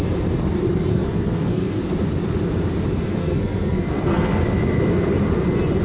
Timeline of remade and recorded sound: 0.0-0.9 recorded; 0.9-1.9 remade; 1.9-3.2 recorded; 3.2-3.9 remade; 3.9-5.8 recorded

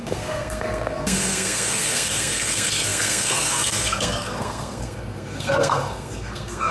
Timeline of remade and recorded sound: 0.0-6.7 remade